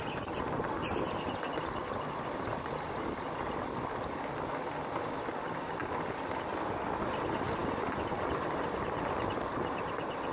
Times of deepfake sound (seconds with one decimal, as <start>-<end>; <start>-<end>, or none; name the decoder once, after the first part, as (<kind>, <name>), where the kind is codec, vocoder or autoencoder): none